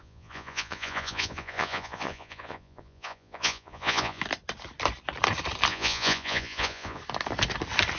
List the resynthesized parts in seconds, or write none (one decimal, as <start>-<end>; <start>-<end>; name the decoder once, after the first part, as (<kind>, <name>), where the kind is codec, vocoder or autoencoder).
0.0-4.2 (vocoder, Vocos); 5.7-7.0